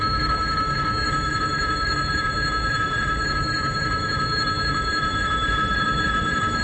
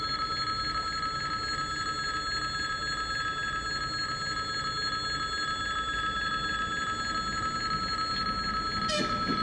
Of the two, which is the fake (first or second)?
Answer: first